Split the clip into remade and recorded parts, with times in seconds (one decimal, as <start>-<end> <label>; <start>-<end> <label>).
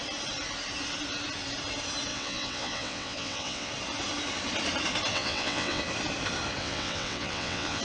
0.0-2.1 recorded; 2.1-3.7 remade; 3.7-5.1 recorded; 5.1-5.8 remade; 5.8-6.6 recorded; 6.6-7.8 remade